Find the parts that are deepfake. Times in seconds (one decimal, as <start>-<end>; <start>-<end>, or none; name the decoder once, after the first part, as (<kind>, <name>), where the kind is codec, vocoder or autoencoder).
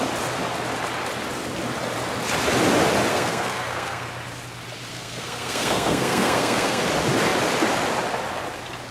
3.1-4.1 (codec, SNAC); 4.9-6.8